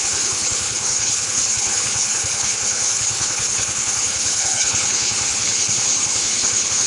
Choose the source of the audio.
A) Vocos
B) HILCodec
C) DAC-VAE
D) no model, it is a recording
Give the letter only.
B